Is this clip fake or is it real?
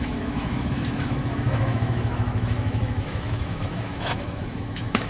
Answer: fake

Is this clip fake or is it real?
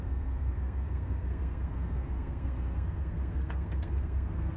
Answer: fake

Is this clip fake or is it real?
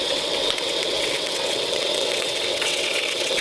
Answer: fake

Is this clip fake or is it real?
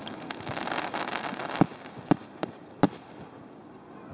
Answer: real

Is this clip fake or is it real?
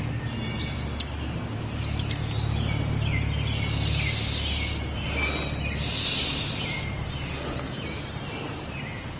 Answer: real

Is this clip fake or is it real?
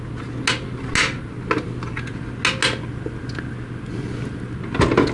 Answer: real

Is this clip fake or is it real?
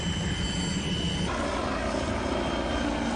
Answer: real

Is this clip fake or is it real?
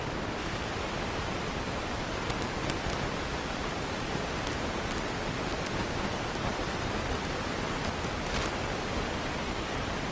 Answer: fake